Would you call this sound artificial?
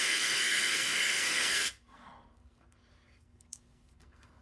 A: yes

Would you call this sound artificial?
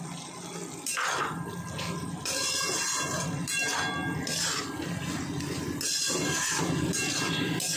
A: no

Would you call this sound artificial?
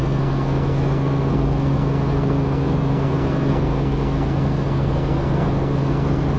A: yes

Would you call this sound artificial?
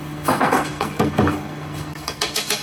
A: yes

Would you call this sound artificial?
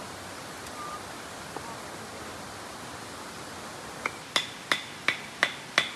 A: no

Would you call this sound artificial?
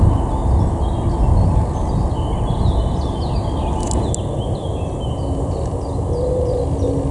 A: no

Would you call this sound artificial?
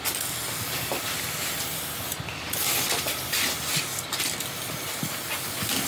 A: no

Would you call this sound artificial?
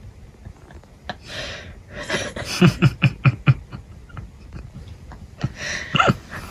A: no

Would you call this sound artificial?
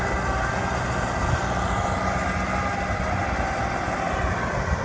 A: no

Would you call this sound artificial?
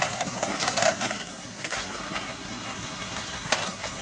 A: yes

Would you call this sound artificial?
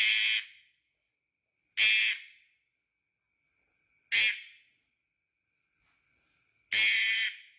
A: no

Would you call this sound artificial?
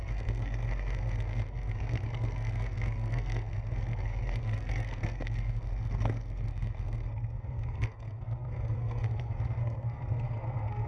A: yes